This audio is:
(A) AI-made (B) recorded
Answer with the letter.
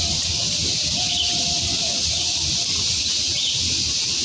B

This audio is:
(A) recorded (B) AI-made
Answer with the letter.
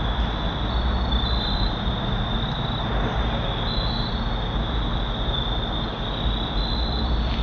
A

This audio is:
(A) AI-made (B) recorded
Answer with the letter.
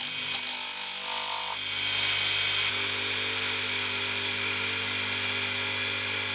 B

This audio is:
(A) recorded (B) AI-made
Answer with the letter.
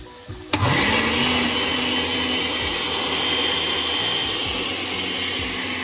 A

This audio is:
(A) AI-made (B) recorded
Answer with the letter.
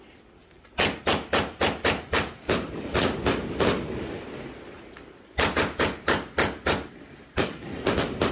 B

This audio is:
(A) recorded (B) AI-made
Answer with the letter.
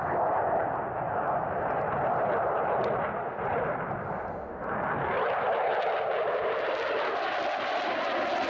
A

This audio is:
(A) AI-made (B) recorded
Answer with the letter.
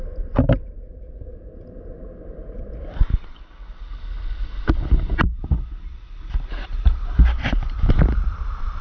B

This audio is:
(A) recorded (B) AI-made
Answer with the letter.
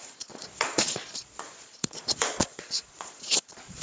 B